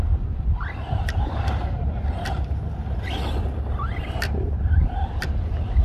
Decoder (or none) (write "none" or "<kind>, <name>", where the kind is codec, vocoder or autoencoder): vocoder, BigVGAN v2